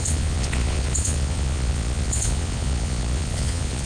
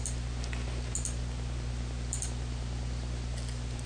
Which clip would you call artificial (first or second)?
first